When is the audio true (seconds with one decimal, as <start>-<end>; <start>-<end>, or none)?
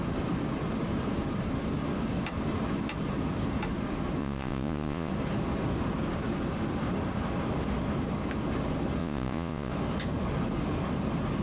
0.0-4.2; 5.1-9.0; 9.7-11.4